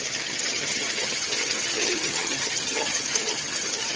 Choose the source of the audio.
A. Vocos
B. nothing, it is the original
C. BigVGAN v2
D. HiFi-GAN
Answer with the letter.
D